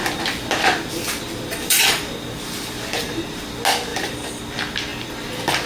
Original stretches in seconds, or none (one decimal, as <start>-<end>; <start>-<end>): 3.2-3.9; 4.4-4.9